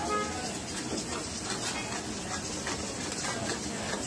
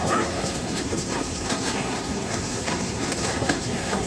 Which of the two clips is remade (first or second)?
second